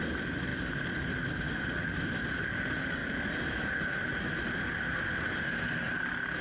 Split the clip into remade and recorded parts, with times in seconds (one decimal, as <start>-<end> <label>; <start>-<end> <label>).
0.0-6.4 recorded